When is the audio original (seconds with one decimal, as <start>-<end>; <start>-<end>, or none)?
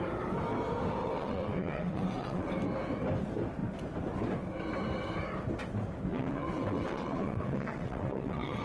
0.0-1.0; 2.5-6.1